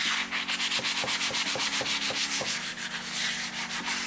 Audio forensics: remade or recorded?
recorded